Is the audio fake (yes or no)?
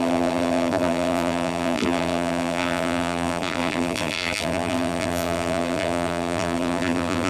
yes